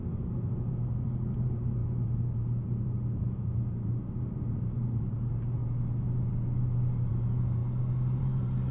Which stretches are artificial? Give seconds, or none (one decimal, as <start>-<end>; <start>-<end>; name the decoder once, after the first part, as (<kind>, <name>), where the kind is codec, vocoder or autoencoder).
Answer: 0.0-5.6 (vocoder, BigVGAN v2); 7.1-7.6; 8.2-8.7